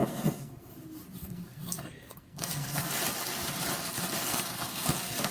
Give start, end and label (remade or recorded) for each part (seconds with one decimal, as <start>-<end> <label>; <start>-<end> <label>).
0.0-0.7 remade; 0.7-1.2 recorded; 1.2-2.9 remade; 2.9-4.2 recorded; 4.2-5.3 remade